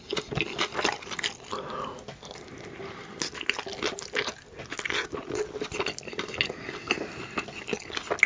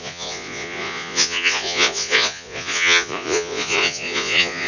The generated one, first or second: second